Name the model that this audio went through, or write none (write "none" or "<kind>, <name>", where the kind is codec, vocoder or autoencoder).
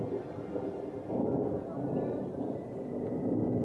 none